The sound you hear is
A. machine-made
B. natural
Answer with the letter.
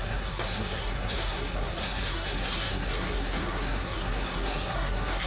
A